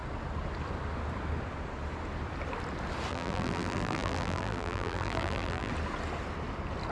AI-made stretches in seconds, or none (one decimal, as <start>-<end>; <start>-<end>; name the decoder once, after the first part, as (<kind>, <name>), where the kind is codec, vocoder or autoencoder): 3.1-5.7 (vocoder, BigVGAN v2)